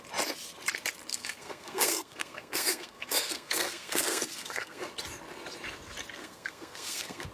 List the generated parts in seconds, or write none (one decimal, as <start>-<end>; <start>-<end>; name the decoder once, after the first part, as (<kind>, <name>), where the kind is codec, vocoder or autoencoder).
1.1-4.9 (codec, SNAC); 6.2-7.3